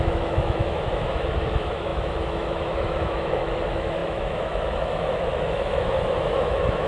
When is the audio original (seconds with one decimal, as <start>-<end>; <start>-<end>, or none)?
none